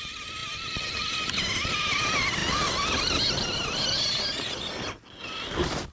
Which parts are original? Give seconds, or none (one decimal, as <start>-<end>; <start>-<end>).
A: 0.0-5.9